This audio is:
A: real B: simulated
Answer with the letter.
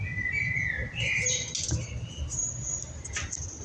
A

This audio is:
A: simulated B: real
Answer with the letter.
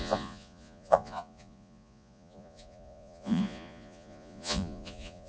A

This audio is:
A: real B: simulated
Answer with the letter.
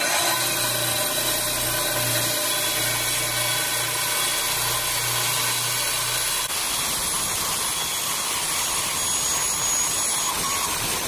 A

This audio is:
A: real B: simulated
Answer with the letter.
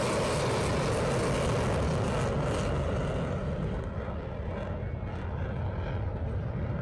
A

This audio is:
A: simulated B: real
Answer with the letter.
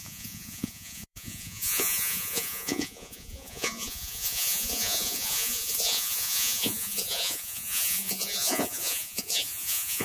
A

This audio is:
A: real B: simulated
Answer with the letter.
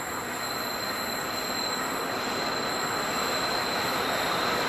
A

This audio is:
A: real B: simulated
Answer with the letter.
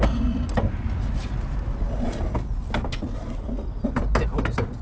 A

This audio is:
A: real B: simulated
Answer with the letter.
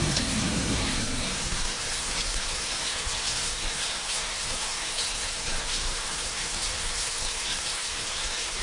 B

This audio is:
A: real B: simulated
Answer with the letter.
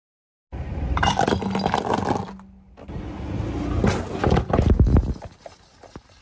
A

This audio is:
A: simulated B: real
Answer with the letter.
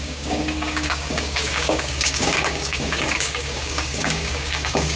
A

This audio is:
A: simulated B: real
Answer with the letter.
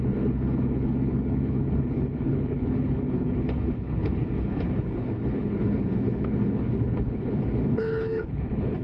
A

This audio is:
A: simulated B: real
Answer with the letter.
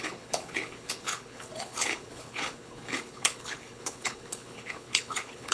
A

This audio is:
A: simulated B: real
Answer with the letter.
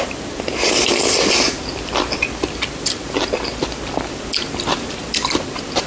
B